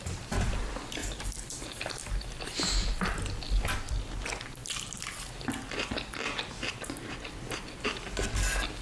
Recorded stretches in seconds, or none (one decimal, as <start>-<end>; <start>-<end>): 0.0-1.0; 1.6-8.8